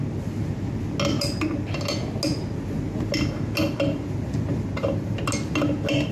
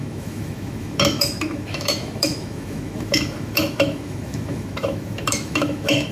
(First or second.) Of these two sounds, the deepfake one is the second